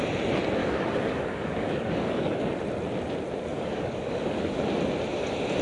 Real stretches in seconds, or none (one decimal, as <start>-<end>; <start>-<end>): 0.0-0.6; 2.6-3.5; 4.6-5.6